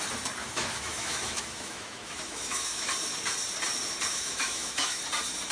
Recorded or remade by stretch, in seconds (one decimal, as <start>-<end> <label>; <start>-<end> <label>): 0.0-0.4 recorded; 0.4-2.9 remade; 2.9-4.1 recorded; 4.1-5.0 remade; 5.0-5.5 recorded